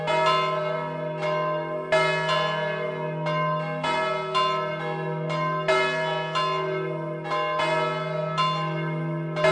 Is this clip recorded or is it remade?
recorded